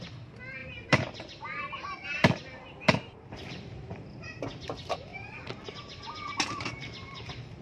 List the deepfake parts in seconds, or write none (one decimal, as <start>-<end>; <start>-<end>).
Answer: 0.6-4.4; 5.1-7.6